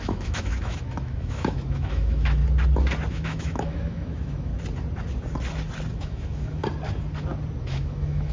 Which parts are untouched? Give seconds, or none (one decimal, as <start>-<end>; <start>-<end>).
2.4-3.1; 4.5-5.9; 6.6-7.6